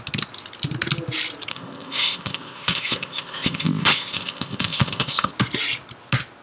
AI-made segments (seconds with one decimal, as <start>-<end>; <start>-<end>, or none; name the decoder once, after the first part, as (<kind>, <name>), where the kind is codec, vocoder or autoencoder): 1.5-5.3 (codec, ZipCodec)

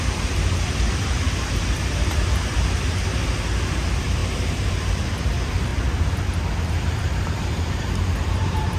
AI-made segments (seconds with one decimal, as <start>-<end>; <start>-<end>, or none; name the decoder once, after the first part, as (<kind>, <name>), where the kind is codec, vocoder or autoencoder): 0.0-3.1 (vocoder, BigVGAN v2); 3.6-5.7; 6.6-8.8